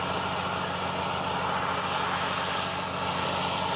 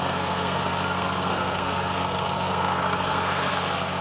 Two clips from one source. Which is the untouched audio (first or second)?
first